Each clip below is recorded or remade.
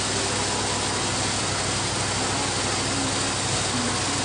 recorded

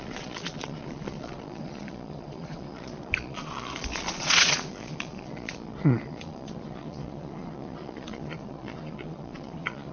remade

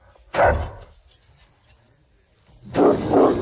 recorded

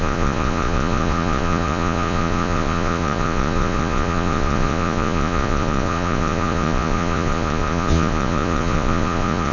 remade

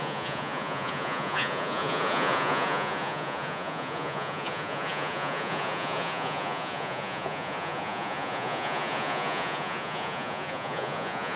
remade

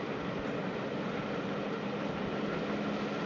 recorded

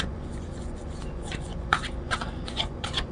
remade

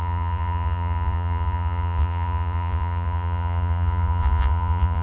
remade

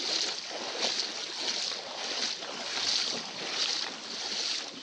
recorded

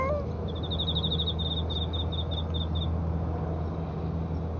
recorded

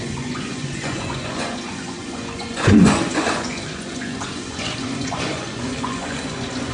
remade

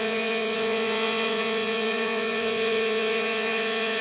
remade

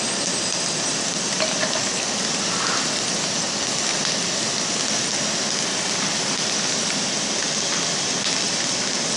recorded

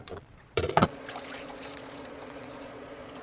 remade